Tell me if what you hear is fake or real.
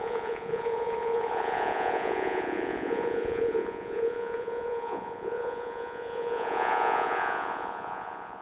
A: fake